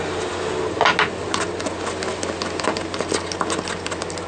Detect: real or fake real